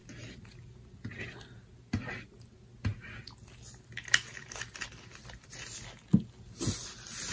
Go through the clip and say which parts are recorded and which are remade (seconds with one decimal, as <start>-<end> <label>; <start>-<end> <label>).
0.0-7.3 recorded